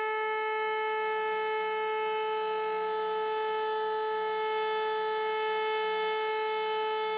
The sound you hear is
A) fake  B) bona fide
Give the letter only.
B